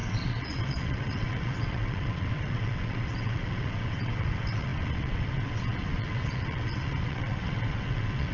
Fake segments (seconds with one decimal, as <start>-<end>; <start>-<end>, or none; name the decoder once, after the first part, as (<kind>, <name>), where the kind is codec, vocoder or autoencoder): 0.0-8.3 (vocoder, WaveNeXt)